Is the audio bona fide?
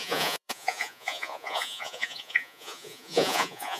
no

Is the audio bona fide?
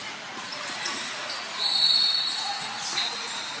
no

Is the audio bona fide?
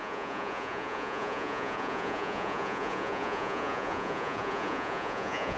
no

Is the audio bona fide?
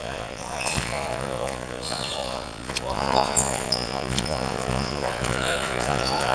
no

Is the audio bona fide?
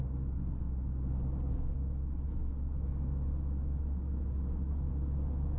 yes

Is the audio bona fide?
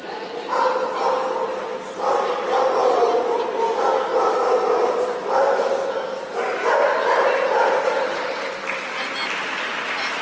yes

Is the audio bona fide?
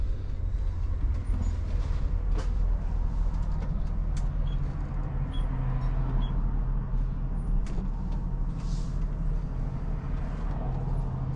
yes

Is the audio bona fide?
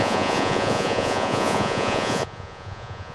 no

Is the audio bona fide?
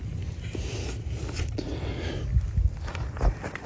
yes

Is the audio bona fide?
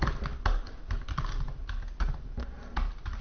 yes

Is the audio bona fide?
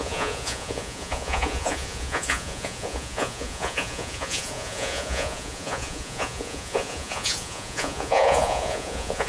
no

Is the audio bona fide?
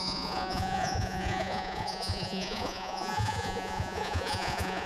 no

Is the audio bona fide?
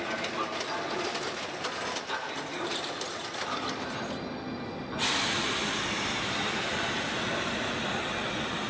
yes